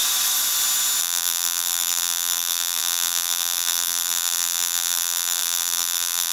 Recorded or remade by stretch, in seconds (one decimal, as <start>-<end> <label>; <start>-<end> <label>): 0.0-1.0 recorded; 1.0-6.3 remade